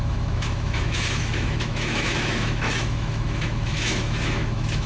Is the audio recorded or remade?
remade